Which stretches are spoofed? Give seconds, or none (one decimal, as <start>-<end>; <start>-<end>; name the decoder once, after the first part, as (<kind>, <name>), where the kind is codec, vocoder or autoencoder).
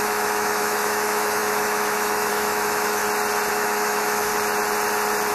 0.0-3.0 (autoencoder, DAC-VAE); 3.5-4.3